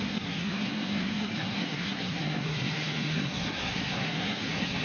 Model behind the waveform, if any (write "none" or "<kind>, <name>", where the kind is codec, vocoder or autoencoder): codec, SNAC